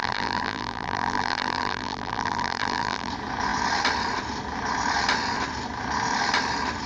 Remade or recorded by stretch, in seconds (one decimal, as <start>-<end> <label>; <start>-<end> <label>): 0.0-3.1 remade; 3.1-6.9 recorded